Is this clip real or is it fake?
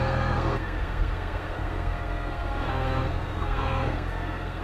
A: fake